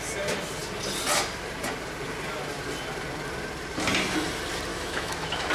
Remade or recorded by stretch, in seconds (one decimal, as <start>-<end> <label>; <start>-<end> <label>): 0.0-4.7 recorded; 4.7-5.5 remade